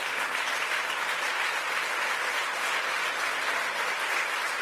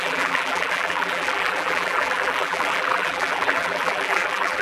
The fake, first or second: second